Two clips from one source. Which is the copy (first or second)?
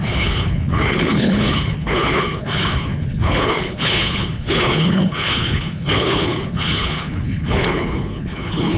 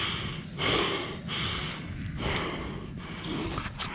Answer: first